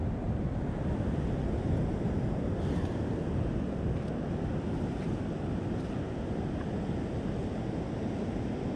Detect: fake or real real